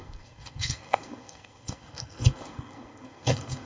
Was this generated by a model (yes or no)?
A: yes